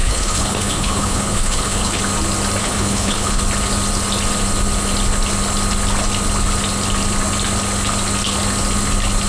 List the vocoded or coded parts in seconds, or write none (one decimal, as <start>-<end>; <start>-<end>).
0.0-2.0; 2.6-3.4